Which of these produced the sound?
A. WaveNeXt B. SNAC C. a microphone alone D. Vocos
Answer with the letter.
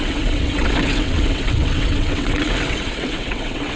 A